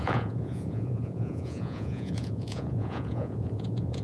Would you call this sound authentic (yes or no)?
no